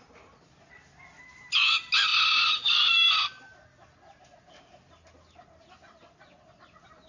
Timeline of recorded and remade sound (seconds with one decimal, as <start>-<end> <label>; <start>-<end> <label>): 0.0-7.1 recorded